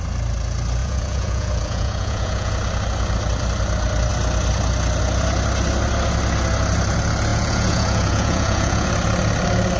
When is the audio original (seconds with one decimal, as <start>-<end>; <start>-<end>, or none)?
0.0-0.8; 2.5-7.3; 8.9-9.8